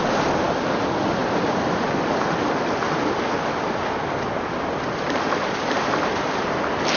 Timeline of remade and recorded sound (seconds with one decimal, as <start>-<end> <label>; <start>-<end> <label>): 0.0-7.0 recorded